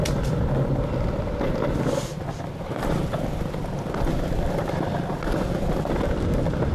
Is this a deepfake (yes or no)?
no